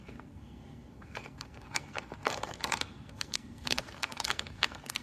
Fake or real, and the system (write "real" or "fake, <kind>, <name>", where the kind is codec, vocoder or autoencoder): fake, codec, SNAC